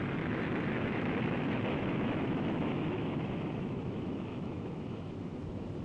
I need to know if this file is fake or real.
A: fake